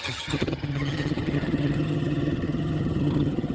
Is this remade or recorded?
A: remade